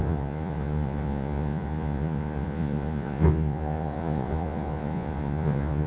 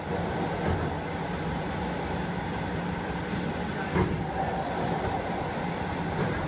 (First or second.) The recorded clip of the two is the second